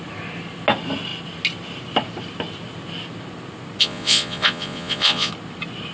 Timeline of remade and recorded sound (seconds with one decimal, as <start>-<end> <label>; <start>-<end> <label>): 0.0-3.8 recorded; 3.8-5.3 remade; 5.3-5.9 recorded